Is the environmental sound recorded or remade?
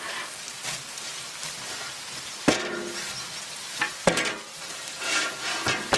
recorded